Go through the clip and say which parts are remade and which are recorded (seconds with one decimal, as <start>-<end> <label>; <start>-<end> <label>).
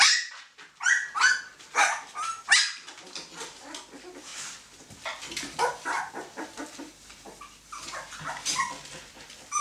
0.0-9.6 recorded